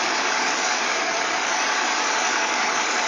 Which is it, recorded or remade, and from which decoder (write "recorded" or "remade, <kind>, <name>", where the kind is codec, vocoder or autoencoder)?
remade, codec, DAC